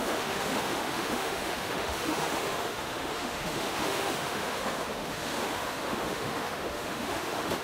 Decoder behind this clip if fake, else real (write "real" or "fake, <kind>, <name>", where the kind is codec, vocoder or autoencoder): fake, autoencoder, DAC-VAE